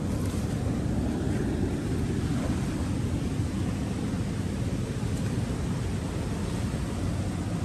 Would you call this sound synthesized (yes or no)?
no